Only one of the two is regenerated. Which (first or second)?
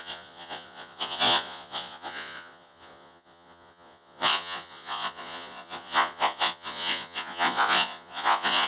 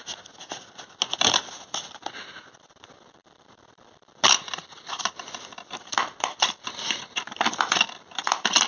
first